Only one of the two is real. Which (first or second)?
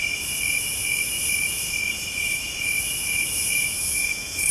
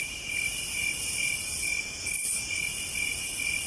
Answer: second